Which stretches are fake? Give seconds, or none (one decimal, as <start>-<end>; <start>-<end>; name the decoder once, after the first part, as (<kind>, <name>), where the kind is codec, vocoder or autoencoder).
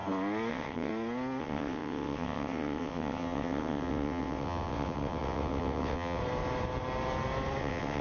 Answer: 0.5-0.9 (vocoder, WaveNeXt); 1.4-6.2; 7.6-8.0